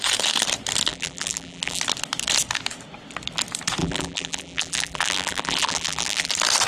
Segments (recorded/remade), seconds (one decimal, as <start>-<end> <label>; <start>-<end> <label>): 0.0-0.9 recorded; 0.9-1.8 remade; 1.8-3.8 recorded; 3.8-6.3 remade; 6.3-6.7 recorded